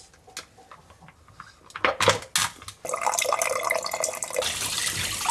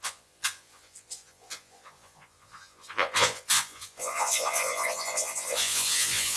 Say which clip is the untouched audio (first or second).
first